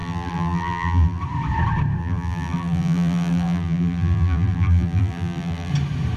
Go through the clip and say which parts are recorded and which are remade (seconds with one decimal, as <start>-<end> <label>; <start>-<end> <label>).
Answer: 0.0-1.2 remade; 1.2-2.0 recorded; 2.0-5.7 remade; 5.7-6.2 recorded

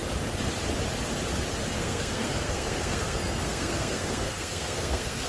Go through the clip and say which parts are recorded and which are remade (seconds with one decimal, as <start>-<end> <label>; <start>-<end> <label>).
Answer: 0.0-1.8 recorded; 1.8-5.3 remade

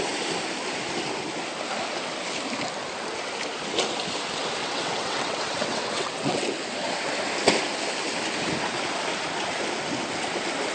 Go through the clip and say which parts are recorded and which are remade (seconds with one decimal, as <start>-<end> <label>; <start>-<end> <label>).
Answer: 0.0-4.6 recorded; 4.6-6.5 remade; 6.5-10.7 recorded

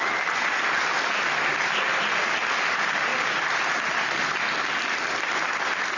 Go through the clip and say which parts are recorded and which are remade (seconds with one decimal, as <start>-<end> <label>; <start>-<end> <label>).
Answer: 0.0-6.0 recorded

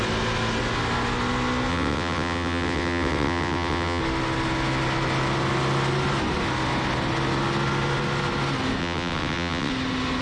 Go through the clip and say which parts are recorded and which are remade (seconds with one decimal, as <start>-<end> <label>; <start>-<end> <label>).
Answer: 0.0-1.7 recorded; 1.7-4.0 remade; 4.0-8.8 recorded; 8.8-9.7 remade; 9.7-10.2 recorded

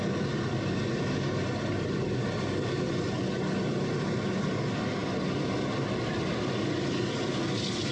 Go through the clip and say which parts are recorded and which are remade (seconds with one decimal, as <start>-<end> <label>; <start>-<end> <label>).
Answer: 0.0-7.9 recorded